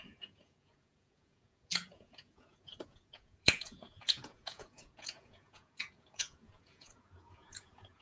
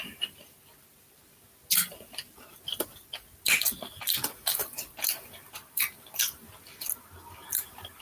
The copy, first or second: first